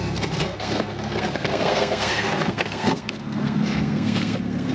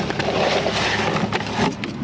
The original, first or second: second